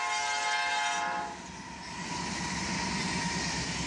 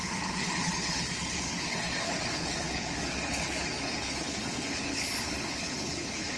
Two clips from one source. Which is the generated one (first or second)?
second